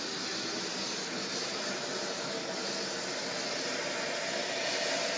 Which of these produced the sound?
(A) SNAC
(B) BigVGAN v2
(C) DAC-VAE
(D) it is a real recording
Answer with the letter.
D